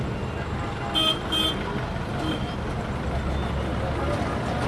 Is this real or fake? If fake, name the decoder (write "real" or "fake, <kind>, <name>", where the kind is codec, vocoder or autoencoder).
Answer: real